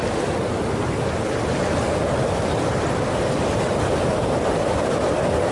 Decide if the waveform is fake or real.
real